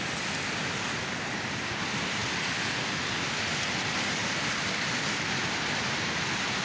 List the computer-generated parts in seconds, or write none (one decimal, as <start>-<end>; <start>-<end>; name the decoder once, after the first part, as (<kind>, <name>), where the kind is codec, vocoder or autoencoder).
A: none